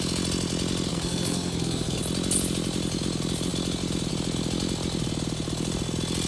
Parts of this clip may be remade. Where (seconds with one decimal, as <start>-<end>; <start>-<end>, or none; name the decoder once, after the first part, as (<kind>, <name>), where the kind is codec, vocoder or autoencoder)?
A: 0.9-2.0 (codec, SNAC)